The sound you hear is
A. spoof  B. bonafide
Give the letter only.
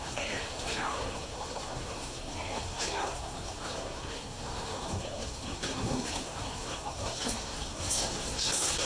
A